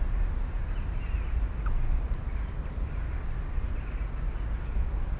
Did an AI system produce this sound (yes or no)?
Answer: no